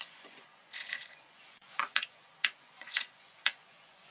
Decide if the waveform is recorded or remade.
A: remade